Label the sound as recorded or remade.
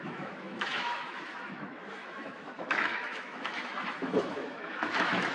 remade